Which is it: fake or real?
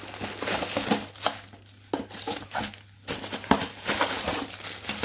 real